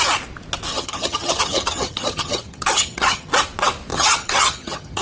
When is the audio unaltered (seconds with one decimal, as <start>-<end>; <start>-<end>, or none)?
0.0-0.7; 3.3-3.9